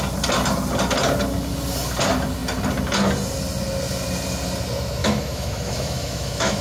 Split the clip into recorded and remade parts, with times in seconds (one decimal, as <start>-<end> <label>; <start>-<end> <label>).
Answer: 0.0-5.0 recorded; 5.0-6.6 remade